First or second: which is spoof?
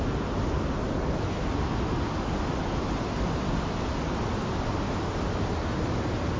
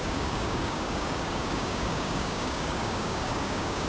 second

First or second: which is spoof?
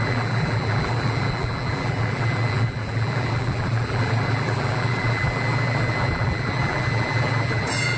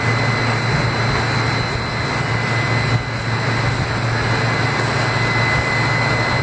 first